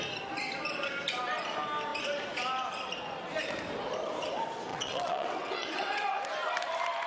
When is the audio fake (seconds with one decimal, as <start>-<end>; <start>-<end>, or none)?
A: 4.7-6.2